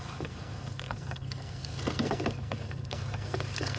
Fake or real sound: fake